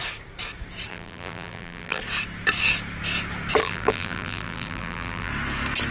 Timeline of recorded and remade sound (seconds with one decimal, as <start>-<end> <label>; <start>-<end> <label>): 0.0-0.9 recorded; 0.9-2.0 remade; 2.0-3.6 recorded; 3.6-5.3 remade; 5.3-5.9 recorded